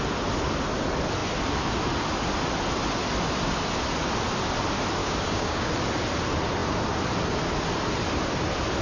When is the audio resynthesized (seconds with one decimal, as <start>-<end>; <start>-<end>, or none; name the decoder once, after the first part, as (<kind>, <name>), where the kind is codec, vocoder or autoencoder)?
5.0-5.7 (codec, DAC)